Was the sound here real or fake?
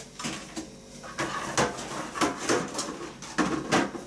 real